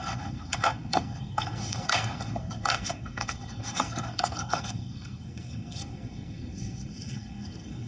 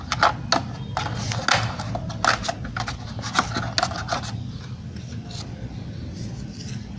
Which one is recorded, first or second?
second